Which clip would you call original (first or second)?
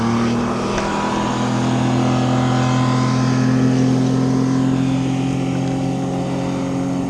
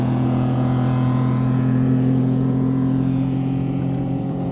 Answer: first